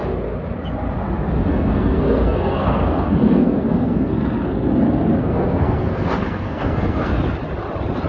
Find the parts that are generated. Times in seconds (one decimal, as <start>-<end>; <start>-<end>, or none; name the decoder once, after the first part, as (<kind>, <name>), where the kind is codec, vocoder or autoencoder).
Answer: 1.5-4.1 (codec, SNAC); 5.2-7.1